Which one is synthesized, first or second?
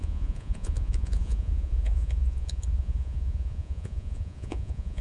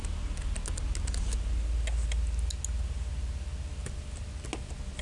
first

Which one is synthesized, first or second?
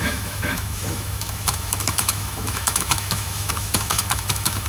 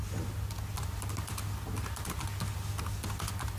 first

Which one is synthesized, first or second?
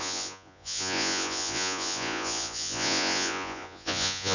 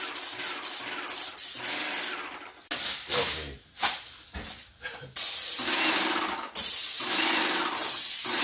first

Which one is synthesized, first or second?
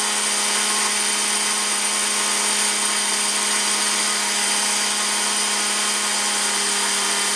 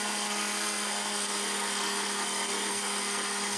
second